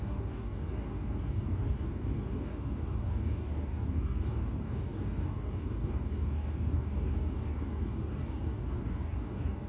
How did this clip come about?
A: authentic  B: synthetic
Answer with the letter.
B